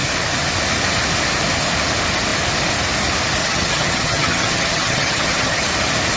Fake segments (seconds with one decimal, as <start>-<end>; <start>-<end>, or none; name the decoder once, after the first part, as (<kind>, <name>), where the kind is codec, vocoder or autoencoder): 3.4-5.7 (vocoder, HiFi-GAN)